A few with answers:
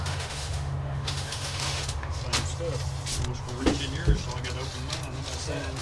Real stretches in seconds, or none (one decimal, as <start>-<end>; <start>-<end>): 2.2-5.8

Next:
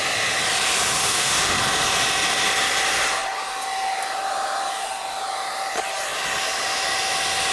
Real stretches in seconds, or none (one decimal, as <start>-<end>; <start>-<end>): 0.0-1.0; 1.6-7.5

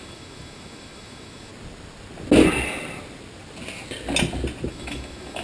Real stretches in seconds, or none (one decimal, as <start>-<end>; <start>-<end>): 1.5-4.7

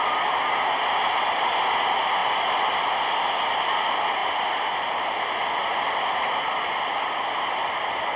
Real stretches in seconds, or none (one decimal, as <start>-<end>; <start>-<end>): 0.0-8.2